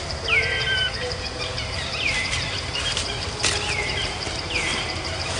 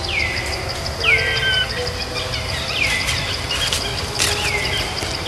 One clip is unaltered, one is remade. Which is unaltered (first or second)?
second